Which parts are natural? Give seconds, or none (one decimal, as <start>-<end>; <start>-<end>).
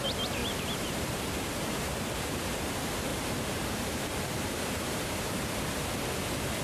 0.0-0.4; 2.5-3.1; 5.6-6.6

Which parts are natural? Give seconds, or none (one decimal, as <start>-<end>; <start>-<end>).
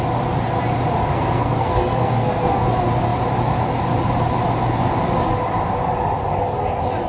0.0-1.1; 2.5-7.1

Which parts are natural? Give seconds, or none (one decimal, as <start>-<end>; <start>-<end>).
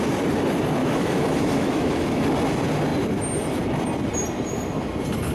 0.0-0.8; 2.2-5.3